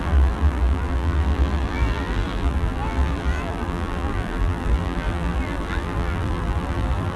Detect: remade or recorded remade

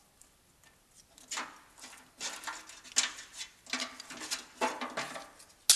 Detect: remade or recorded recorded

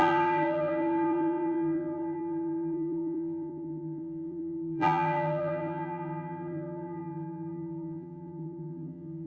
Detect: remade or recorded remade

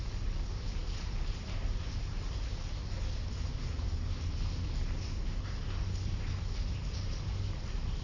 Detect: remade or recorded recorded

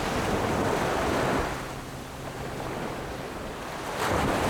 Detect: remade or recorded recorded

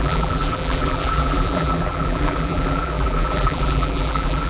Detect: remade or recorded remade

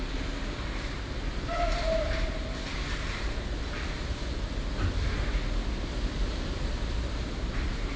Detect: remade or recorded recorded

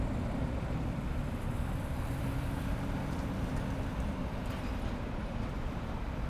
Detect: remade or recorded remade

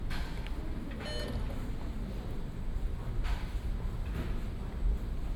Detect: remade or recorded recorded